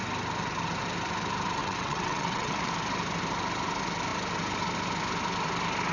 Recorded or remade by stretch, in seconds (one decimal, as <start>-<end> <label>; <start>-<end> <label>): 0.0-1.6 recorded; 1.6-2.7 remade; 2.7-5.9 recorded